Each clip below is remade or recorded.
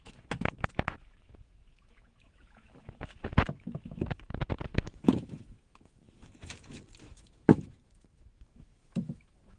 remade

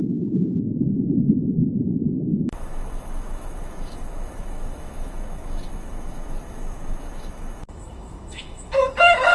remade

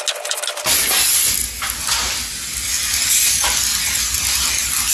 recorded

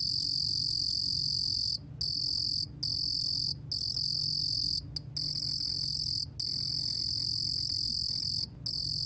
recorded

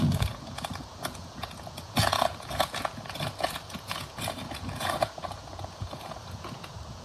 remade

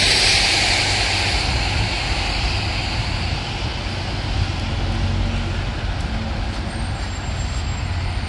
recorded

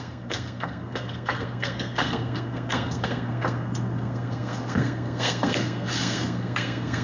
remade